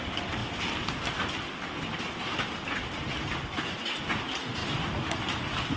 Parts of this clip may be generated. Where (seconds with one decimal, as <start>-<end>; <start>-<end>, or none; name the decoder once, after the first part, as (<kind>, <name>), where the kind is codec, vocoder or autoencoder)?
none